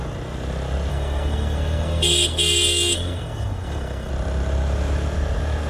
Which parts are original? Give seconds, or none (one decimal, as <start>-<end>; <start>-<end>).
0.0-0.9; 4.1-5.7

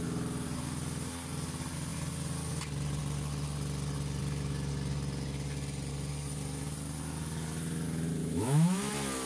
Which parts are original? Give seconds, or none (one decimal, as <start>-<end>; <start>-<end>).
0.0-8.2; 8.9-9.3

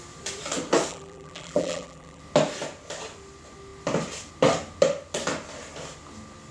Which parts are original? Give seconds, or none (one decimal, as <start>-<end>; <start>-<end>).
0.0-0.9; 2.2-6.5

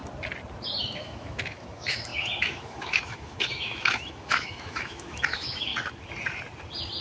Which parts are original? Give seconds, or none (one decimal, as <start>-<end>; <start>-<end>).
0.0-0.8; 5.7-7.0

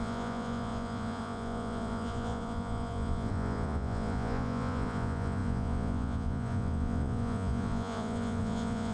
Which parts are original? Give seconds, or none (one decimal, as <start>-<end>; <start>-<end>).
none